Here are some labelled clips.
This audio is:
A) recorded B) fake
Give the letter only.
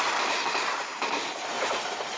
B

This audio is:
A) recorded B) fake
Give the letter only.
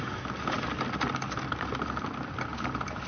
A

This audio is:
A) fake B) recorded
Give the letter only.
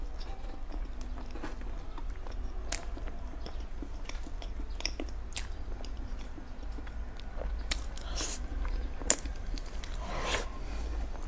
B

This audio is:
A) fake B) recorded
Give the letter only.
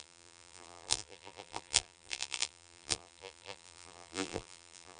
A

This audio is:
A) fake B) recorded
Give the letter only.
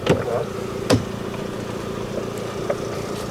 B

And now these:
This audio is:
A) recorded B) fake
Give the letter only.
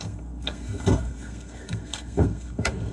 B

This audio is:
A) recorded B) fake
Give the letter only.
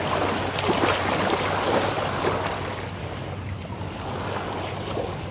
A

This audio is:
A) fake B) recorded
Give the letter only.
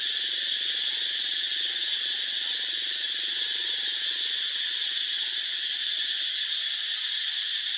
B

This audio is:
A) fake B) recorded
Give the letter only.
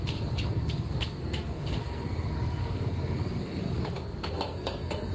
A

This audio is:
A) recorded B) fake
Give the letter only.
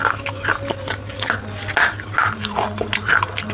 A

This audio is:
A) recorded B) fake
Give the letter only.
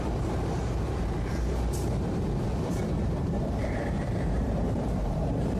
B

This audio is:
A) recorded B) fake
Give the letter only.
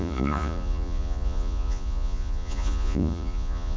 B